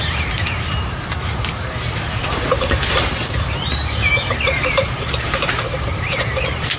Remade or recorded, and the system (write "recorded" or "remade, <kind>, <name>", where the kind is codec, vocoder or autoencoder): remade, vocoder, BigVGAN v2